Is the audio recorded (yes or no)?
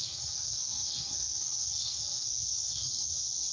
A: no